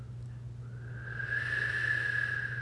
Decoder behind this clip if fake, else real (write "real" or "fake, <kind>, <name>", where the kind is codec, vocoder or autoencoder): real